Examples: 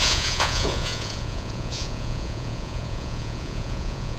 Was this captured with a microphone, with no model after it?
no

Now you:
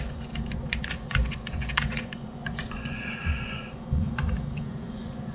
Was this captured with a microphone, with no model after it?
no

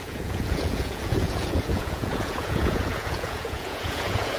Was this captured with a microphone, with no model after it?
no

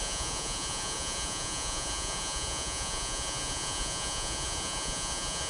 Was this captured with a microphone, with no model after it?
no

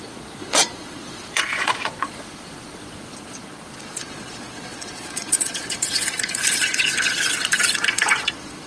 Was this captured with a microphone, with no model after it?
no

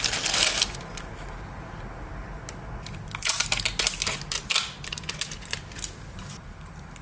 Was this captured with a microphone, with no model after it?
yes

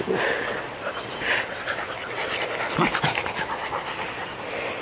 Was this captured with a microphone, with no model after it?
yes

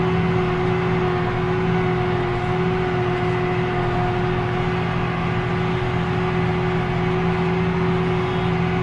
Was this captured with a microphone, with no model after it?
yes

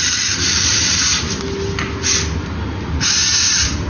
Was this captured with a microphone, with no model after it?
yes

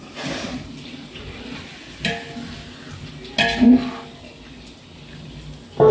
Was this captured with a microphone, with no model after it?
yes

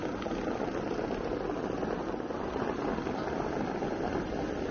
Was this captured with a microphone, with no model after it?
yes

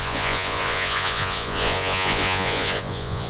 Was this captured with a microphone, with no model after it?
no